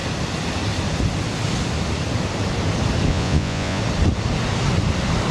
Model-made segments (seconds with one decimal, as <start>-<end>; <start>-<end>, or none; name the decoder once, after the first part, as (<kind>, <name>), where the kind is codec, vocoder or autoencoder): 3.1-3.8 (vocoder, Vocos)